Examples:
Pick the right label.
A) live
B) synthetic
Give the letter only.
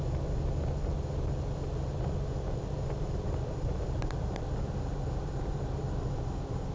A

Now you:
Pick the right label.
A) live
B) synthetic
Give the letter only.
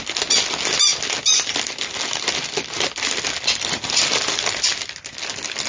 A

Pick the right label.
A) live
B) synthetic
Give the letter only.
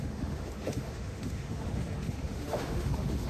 B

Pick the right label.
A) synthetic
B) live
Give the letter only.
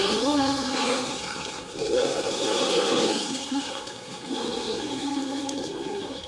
A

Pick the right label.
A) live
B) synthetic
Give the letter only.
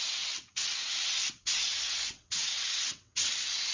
B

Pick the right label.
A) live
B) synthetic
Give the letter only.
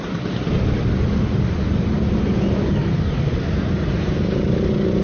A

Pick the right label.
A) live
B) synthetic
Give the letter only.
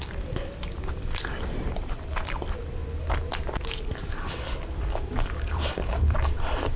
B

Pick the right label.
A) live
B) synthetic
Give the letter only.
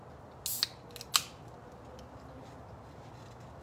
A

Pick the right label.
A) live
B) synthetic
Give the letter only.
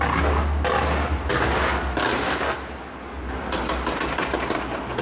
A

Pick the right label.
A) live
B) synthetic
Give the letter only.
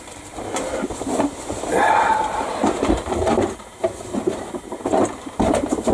B